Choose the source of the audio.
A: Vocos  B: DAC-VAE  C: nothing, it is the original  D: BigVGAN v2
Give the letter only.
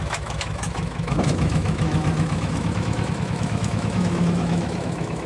B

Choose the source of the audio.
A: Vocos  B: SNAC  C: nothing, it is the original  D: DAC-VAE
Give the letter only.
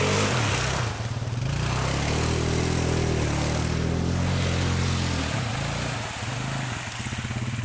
C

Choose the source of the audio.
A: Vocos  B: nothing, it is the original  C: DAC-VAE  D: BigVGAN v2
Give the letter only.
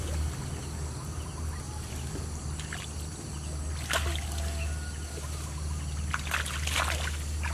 B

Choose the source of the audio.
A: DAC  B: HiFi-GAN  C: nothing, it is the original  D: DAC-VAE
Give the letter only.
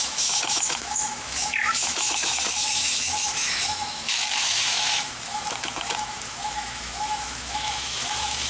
D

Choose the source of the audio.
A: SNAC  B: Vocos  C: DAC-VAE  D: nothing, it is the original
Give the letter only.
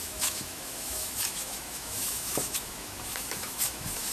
C